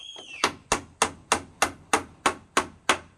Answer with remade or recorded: recorded